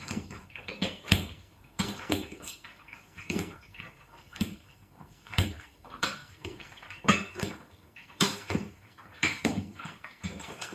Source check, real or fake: fake